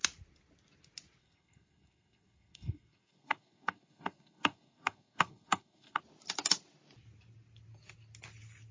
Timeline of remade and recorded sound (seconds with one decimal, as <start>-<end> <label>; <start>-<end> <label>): 0.0-1.2 recorded; 1.2-6.0 remade; 6.0-8.7 recorded

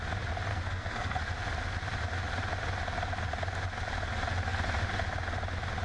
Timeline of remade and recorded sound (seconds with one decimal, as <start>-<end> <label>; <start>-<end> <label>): 0.0-0.5 recorded; 0.5-1.2 remade; 1.2-5.8 recorded